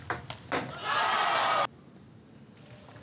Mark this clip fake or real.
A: real